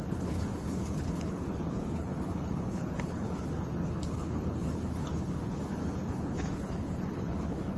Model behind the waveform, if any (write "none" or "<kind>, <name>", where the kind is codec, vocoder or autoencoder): codec, HILCodec